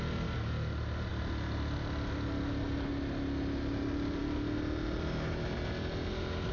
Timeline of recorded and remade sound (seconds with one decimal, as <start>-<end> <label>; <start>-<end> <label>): 0.0-6.5 recorded